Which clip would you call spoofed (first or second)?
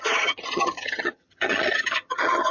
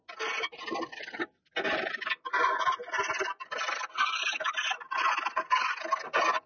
first